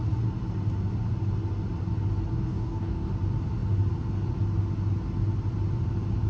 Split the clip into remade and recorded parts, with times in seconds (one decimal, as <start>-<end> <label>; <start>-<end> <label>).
0.0-2.3 recorded; 2.3-3.1 remade; 3.1-6.3 recorded